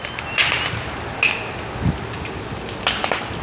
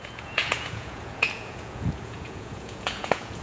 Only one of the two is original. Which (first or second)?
first